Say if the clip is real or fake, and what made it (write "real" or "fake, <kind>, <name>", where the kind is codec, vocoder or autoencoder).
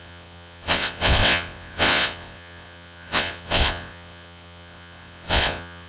fake, vocoder, WaveNeXt